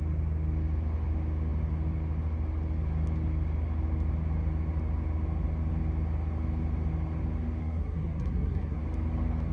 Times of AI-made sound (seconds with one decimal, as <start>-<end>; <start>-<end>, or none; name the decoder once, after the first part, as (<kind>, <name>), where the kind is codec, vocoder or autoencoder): 7.6-8.8 (codec, SNAC)